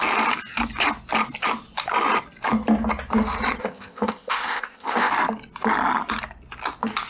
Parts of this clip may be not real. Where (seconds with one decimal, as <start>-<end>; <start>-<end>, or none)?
3.6-5.1